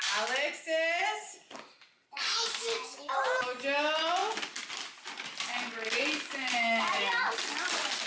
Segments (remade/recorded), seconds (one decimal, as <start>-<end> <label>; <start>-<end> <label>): 0.0-8.1 recorded